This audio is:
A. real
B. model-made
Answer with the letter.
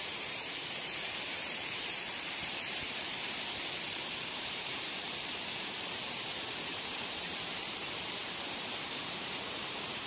B